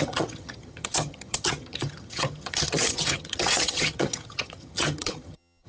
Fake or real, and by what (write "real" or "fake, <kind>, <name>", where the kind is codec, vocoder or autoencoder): fake, vocoder, HiFi-GAN